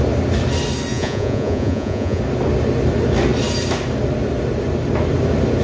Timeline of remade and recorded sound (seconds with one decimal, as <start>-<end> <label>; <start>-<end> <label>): 0.0-0.9 recorded; 0.9-2.2 remade; 2.2-5.6 recorded